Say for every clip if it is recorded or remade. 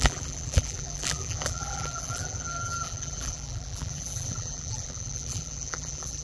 remade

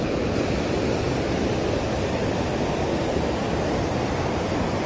recorded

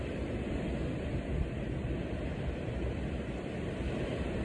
recorded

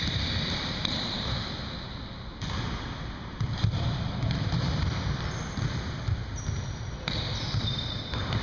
remade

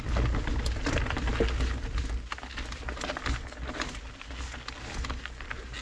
recorded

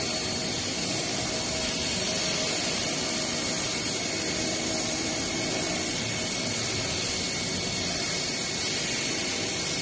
remade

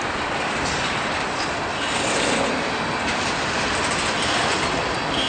remade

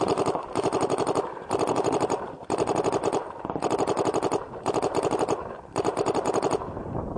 remade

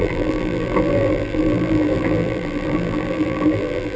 remade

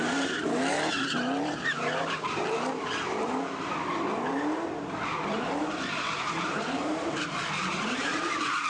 remade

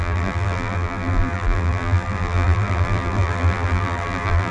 remade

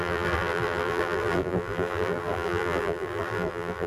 remade